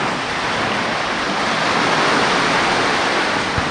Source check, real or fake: real